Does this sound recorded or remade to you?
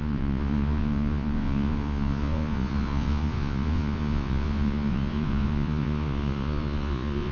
remade